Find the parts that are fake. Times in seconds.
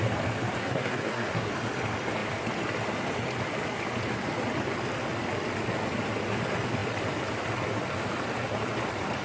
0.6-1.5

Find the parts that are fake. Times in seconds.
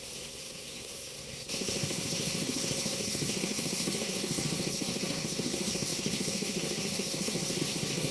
0.0-8.1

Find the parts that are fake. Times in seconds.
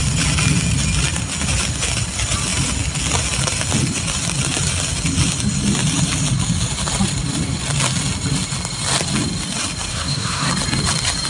9.9-10.5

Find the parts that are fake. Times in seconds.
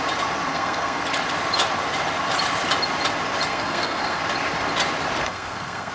0.5-1.0; 3.5-4.2; 5.2-5.9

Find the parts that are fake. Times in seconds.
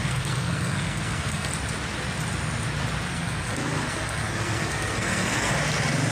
0.0-1.5; 3.1-5.5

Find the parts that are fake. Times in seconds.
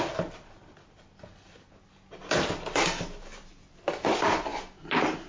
none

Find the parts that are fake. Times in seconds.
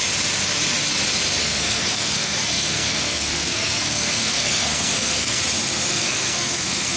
1.4-5.4; 5.9-7.0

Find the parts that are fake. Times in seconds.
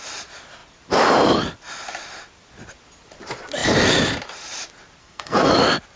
5.0-5.5